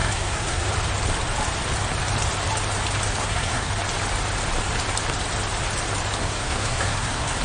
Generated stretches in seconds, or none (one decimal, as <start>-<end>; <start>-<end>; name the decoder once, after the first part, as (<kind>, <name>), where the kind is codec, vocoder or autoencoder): 0.0-0.7 (codec, SNAC); 3.2-3.7; 6.2-7.4